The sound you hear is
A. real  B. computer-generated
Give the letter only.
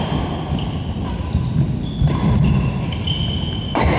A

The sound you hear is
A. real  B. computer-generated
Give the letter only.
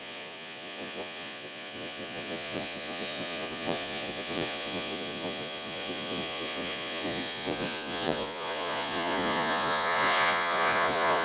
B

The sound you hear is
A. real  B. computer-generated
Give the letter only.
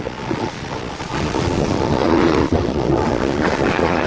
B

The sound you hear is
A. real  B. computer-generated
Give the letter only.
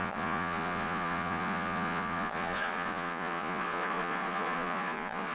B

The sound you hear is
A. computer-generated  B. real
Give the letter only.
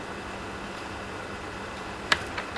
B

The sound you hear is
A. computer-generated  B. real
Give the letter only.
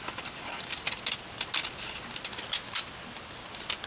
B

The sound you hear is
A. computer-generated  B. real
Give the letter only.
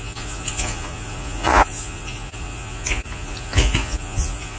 A